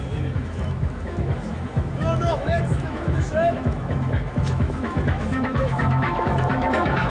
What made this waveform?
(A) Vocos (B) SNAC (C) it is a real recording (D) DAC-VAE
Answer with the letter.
D